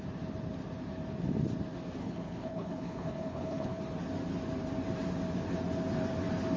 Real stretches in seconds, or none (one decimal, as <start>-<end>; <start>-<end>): 0.0-2.0; 3.8-6.6